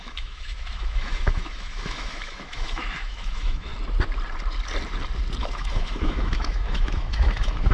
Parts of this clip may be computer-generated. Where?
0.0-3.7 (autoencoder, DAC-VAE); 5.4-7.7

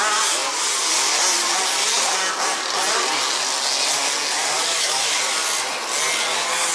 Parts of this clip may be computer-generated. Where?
4.7-5.2 (autoencoder, DAC-VAE)